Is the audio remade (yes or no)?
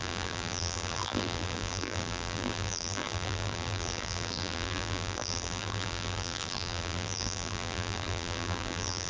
yes